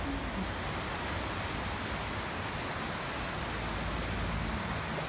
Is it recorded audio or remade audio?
recorded